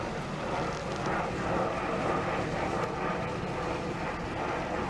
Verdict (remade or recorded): recorded